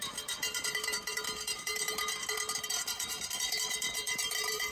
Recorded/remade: remade